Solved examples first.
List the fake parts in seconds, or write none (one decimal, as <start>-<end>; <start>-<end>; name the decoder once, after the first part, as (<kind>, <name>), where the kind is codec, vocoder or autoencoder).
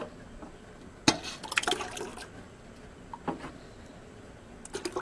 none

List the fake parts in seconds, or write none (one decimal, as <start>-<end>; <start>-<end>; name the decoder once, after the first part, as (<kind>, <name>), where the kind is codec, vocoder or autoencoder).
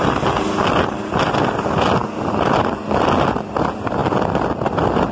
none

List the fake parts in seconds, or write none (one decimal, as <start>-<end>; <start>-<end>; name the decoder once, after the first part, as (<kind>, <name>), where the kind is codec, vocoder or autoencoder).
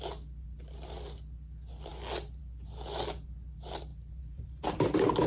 3.9-4.6 (vocoder, BigVGAN v2)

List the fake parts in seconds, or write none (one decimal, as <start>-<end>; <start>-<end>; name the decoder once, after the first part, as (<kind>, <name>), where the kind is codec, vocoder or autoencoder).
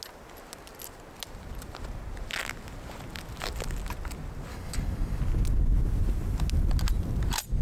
4.5-5.2 (codec, DAC)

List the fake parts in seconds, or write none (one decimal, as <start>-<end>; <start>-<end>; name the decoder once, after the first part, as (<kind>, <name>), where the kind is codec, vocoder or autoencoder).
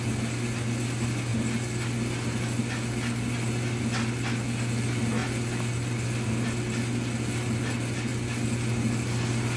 none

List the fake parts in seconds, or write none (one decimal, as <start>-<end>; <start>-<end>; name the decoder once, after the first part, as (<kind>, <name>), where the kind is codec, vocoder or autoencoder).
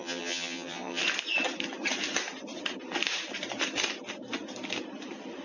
0.0-1.0 (vocoder, HiFi-GAN)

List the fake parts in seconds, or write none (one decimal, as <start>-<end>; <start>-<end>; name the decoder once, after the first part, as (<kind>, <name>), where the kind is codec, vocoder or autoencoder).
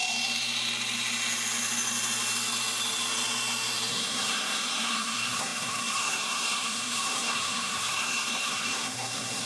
3.9-9.5 (codec, SNAC)